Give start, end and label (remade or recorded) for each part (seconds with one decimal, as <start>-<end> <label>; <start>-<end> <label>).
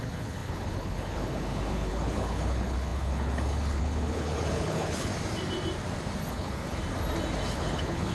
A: 0.0-5.1 remade; 5.1-6.3 recorded; 6.3-6.8 remade; 6.8-7.5 recorded; 7.5-8.1 remade